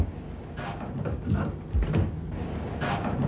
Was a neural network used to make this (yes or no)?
no